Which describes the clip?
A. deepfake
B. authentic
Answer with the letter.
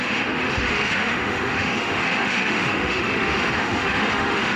A